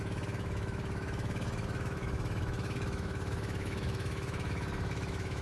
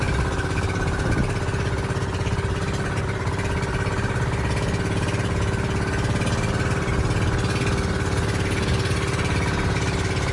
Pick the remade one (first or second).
first